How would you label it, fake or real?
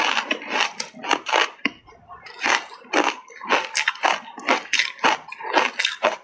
real